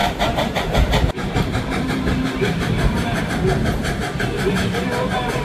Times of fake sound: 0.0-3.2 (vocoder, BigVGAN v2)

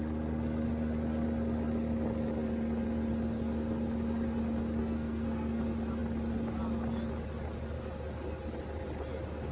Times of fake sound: 4.8-5.6 (codec, SNAC)

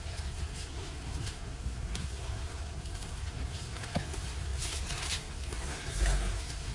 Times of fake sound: 0.0-6.7 (codec, SNAC)

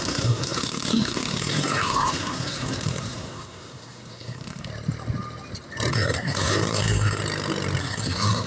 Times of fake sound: 0.0-4.7 (codec, SNAC); 5.9-7.2; 7.8-8.5

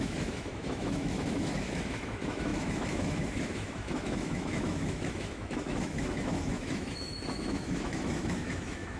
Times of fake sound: 0.0-9.0 (autoencoder, DAC-VAE)

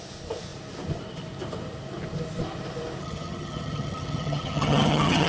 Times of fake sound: 3.0-5.3 (vocoder, HiFi-GAN)

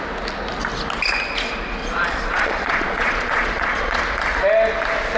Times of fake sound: 1.8-4.0 (vocoder, Vocos)

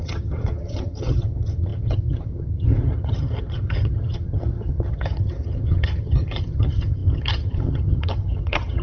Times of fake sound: 0.0-8.8 (vocoder, HiFi-GAN)